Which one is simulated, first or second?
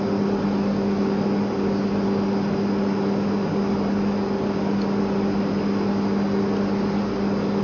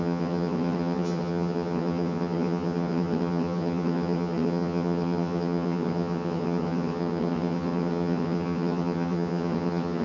second